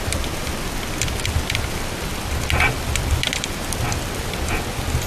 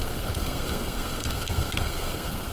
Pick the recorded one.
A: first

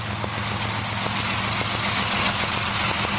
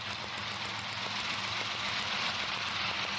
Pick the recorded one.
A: first